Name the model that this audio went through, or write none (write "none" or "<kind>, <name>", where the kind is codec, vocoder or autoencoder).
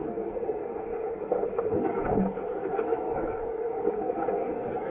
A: codec, SNAC